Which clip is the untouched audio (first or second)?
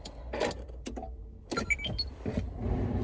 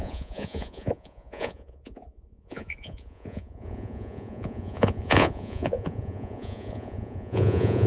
first